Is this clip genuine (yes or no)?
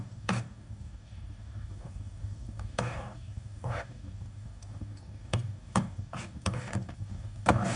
no